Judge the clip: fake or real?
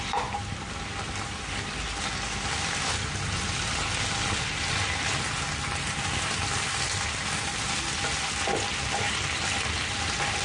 real